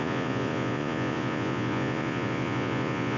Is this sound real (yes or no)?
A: no